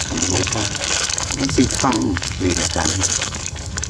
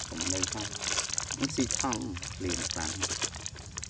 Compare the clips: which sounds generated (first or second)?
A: first